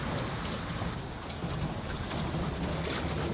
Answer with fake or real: real